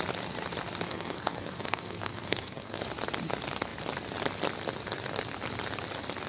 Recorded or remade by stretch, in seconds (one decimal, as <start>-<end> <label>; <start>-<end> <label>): 0.0-0.9 recorded; 0.9-2.8 remade; 2.8-6.3 recorded